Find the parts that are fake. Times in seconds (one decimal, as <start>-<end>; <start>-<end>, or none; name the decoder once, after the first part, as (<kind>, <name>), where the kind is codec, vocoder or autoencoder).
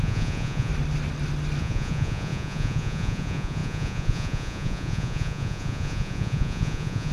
0.0-0.7 (vocoder, Vocos); 1.6-7.1